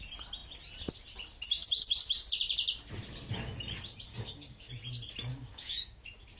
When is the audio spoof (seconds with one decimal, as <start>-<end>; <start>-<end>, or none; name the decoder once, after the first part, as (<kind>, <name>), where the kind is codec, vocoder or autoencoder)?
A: 4.1-4.7 (codec, DAC); 5.3-6.0